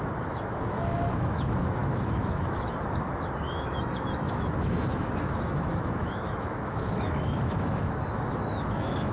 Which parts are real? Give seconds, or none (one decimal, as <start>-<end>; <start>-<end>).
none